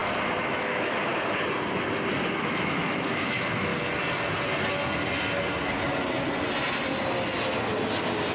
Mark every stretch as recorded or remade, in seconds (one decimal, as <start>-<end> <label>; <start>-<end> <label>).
0.0-0.5 recorded; 0.5-1.1 remade; 1.1-2.4 recorded; 2.4-3.7 remade; 3.7-8.3 recorded